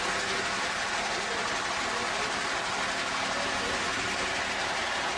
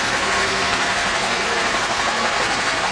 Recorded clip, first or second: first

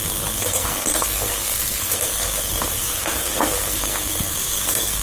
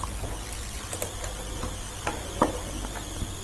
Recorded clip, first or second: second